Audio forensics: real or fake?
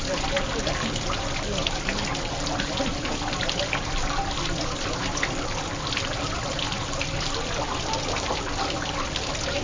real